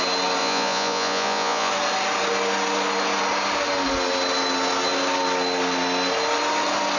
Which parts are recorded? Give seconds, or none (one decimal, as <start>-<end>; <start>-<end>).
0.0-0.4; 1.7-7.0